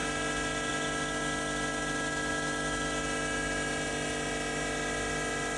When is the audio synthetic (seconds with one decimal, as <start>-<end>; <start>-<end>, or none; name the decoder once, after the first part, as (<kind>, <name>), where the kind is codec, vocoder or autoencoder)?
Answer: none